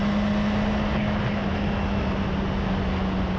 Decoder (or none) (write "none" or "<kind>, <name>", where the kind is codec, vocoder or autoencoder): none